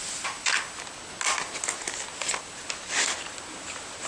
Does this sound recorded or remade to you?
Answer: recorded